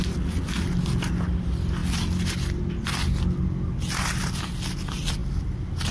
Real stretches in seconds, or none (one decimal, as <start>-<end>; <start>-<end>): 0.0-1.8; 2.6-5.2

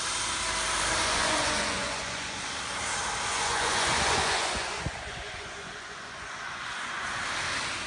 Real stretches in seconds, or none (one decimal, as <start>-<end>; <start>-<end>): 0.0-1.0; 2.4-3.3; 7.2-7.9

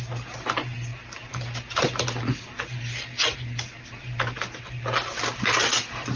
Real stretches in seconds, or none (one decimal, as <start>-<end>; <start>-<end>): 0.0-6.2